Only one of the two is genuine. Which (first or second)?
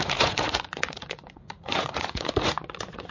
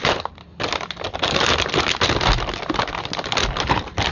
second